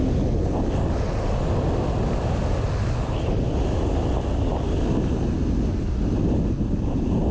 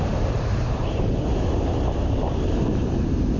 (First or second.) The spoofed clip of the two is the second